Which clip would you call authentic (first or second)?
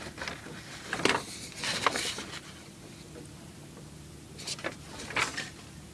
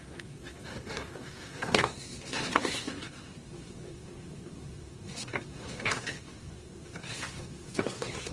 first